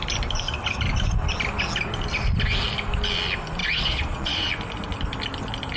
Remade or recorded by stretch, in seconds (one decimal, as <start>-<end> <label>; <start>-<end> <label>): 0.0-3.6 recorded; 3.6-4.5 remade; 4.5-5.8 recorded